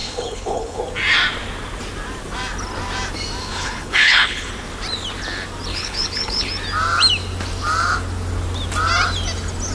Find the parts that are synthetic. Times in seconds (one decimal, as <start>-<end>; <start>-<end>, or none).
0.0-0.8; 3.4-4.5; 5.7-6.5